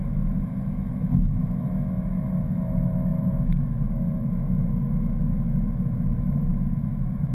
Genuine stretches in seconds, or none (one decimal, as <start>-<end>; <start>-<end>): none